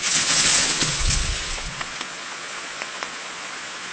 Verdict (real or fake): fake